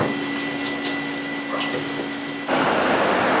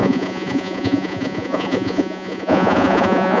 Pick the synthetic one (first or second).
second